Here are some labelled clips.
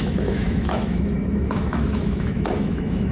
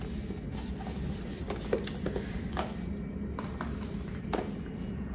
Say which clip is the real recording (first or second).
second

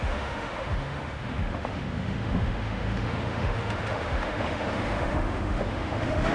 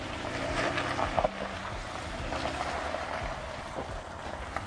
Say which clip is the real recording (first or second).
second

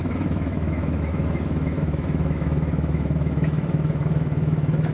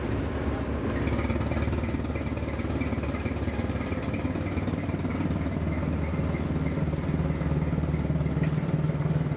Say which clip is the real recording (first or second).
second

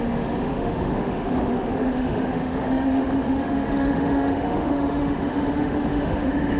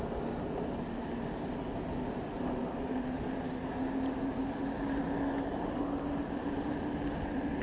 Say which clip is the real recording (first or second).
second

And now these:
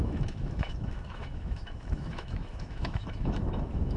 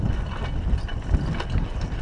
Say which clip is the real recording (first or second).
second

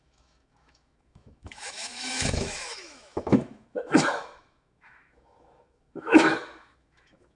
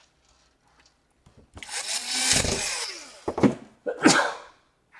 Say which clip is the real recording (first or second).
second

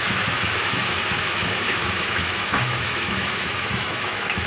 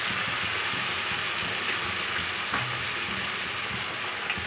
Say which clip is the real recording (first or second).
second